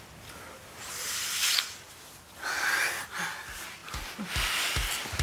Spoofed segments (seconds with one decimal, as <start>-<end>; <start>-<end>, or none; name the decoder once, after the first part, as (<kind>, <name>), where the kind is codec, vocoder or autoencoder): 3.8-4.6 (vocoder, BigVGAN v2)